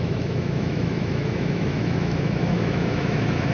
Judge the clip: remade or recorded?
remade